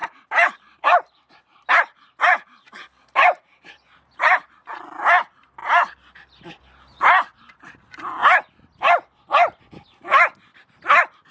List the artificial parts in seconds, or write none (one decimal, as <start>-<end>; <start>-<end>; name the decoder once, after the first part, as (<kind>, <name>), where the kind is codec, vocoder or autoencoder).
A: 0.0-4.8 (vocoder, BigVGAN v2)